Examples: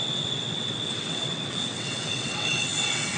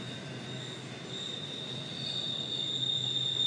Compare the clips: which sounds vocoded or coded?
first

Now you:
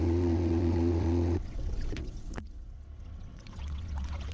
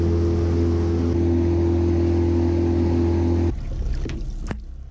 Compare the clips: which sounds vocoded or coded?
first